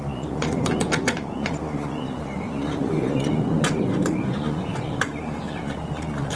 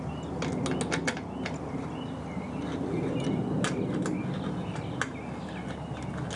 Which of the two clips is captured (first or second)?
second